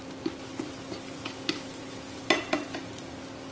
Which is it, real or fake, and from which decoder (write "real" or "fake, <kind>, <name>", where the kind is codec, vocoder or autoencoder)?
real